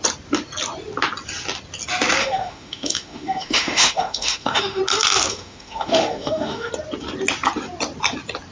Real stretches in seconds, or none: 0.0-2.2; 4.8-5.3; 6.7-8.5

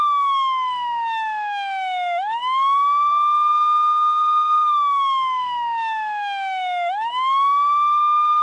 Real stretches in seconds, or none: 3.1-4.2

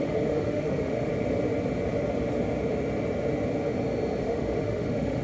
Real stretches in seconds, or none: 1.1-4.2

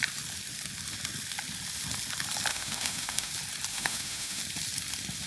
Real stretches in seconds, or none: 0.0-2.5; 3.3-3.7; 4.4-5.3

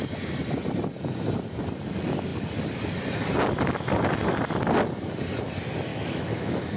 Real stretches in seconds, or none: 0.0-5.9

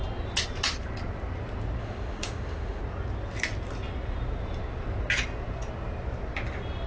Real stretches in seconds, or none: 0.0-1.8; 2.8-6.9

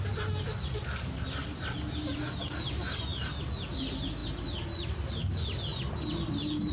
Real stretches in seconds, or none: 0.0-6.7